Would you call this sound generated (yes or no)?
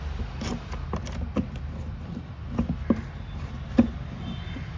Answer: no